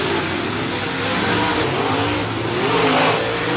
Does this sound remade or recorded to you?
recorded